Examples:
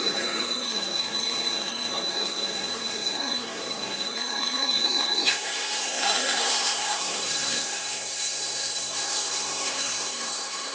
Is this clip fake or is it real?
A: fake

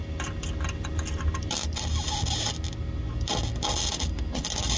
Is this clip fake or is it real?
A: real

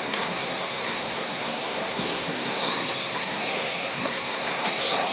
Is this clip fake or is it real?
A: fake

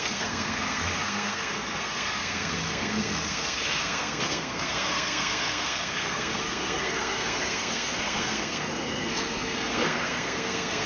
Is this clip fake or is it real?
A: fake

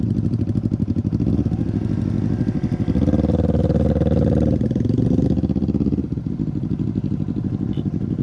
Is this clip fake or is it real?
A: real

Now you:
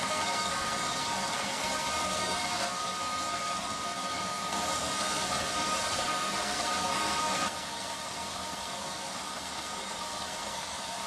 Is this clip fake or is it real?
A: fake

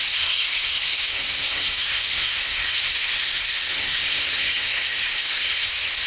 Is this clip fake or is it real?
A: fake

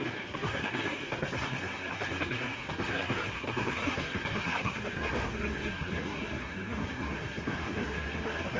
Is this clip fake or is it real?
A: fake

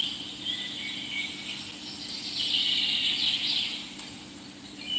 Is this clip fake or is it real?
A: real